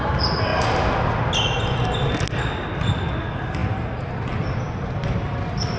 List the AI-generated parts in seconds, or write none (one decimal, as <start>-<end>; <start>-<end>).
none